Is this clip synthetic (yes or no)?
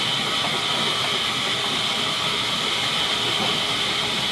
no